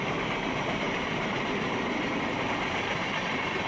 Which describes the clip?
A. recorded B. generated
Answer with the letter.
B